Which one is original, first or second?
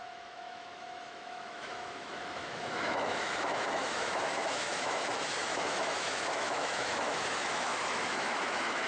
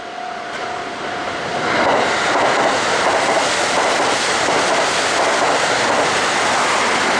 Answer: second